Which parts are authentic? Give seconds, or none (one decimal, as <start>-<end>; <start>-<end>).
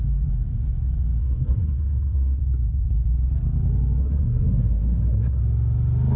0.0-1.2; 2.4-4.0; 5.4-6.2